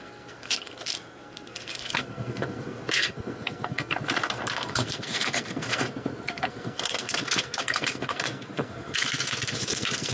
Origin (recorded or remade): remade